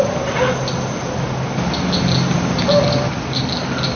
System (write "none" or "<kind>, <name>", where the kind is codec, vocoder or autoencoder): none